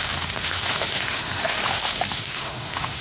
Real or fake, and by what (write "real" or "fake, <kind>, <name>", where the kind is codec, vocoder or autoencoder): fake, autoencoder, DAC-VAE